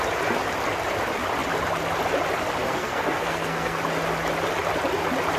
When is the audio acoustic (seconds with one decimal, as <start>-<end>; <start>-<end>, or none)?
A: 0.0-2.6; 3.8-5.4